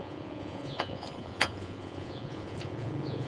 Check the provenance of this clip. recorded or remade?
remade